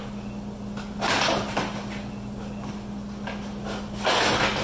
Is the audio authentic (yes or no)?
yes